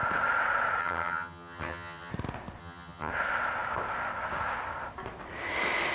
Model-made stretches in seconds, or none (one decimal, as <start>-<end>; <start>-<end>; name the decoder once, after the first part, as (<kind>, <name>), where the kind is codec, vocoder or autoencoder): 0.8-2.1 (vocoder, HiFi-GAN); 2.6-3.1